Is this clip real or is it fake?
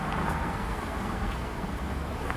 fake